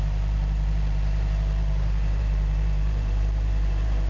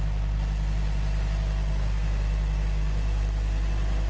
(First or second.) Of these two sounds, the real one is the second